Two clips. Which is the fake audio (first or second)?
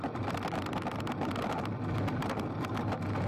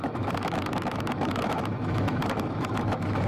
second